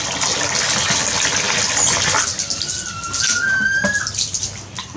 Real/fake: real